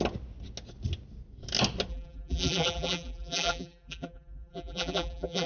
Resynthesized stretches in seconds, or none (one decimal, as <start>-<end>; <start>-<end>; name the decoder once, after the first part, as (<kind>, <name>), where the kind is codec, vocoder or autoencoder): 1.9-5.5 (vocoder, BigVGAN v2)